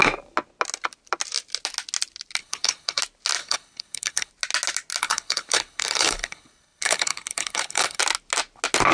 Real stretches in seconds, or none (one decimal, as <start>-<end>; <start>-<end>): 0.0-2.4; 3.0-3.4; 4.3-5.0; 8.0-8.9